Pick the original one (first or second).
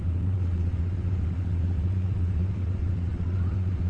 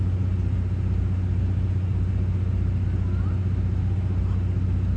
second